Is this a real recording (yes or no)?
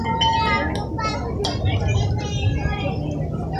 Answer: yes